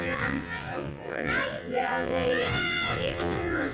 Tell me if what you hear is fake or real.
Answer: fake